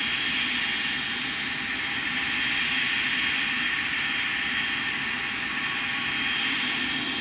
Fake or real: real